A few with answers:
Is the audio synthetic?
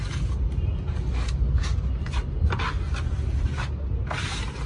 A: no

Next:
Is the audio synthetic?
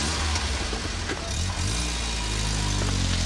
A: no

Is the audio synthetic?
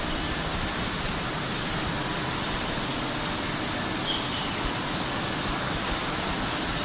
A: no